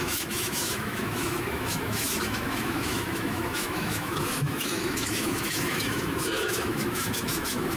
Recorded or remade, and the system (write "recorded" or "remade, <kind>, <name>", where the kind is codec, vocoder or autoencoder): remade, autoencoder, DAC-VAE